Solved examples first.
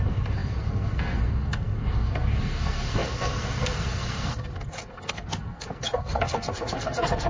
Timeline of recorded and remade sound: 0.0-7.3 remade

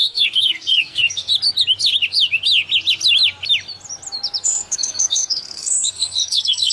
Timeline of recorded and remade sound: 0.0-1.3 remade; 1.3-4.4 recorded; 4.4-6.7 remade